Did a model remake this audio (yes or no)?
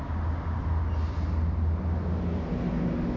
no